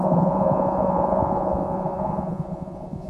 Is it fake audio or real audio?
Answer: fake